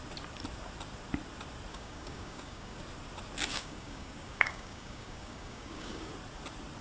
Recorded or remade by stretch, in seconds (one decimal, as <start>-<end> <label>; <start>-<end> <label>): 0.0-1.7 recorded; 1.7-2.8 remade; 2.8-3.5 recorded; 3.5-6.1 remade; 6.1-6.8 recorded